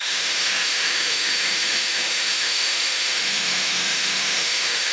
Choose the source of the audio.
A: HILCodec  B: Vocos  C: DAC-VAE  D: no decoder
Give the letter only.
C